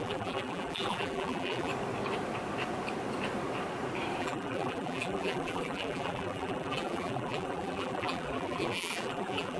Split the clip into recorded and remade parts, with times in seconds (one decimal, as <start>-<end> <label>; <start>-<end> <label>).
0.0-1.7 remade; 1.7-4.2 recorded; 4.2-9.6 remade

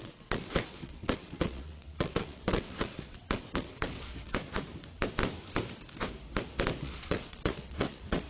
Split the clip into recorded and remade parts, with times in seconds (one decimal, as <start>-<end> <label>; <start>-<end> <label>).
0.0-4.1 remade; 4.1-6.8 recorded; 6.8-8.3 remade